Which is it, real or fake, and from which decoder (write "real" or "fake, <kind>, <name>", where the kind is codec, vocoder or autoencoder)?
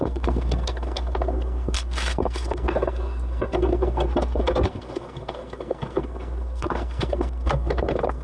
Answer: fake, codec, SNAC